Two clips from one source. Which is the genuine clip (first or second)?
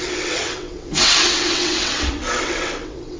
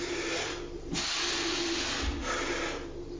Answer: second